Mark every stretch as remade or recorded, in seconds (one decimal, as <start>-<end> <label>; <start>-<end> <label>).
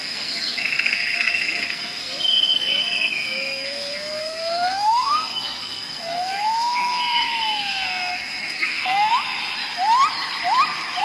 0.0-9.1 remade; 9.1-11.0 recorded